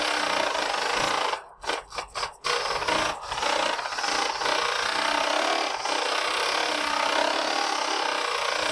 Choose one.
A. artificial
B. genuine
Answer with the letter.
B